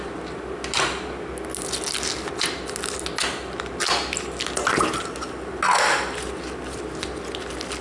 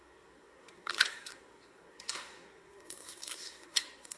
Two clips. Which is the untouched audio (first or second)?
first